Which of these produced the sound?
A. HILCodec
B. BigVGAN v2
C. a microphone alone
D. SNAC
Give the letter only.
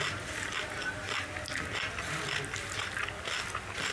C